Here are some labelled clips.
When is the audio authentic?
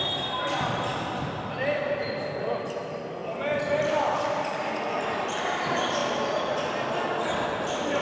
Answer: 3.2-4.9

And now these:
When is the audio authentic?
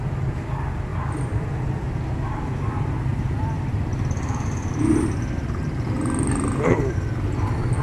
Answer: 0.0-0.9; 1.5-3.1; 5.0-7.8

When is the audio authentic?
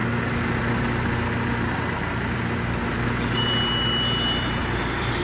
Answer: 0.6-5.2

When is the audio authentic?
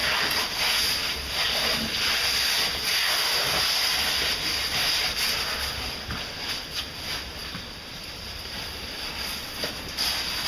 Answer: 0.0-7.4; 9.1-10.5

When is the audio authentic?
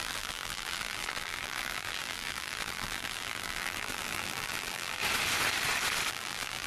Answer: 5.0-6.1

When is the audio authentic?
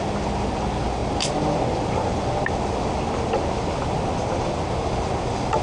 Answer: 0.0-5.6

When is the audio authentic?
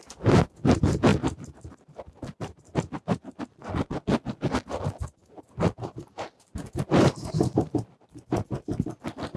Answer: 0.0-1.1; 3.4-5.2; 8.4-9.4